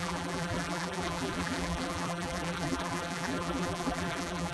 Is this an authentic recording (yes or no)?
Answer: no